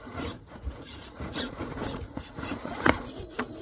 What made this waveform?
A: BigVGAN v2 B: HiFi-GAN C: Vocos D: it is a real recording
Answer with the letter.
C